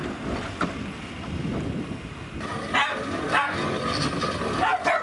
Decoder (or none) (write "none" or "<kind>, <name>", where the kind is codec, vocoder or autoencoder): none